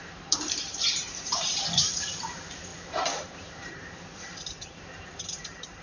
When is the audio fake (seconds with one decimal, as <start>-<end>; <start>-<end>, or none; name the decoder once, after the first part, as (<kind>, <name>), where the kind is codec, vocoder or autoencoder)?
0.0-5.8 (vocoder, BigVGAN v2)